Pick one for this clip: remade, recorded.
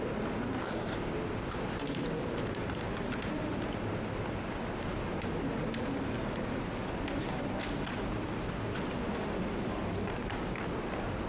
recorded